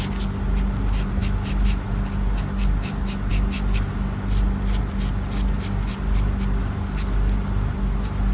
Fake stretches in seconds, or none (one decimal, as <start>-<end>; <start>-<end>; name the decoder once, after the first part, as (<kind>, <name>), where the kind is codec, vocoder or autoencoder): none